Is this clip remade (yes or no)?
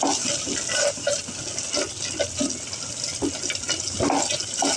no